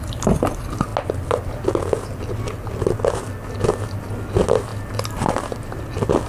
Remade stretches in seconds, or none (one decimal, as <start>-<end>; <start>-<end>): none